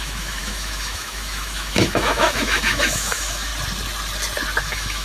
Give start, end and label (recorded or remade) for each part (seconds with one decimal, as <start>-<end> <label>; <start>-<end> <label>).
0.0-3.5 remade; 3.5-4.6 recorded; 4.6-5.0 remade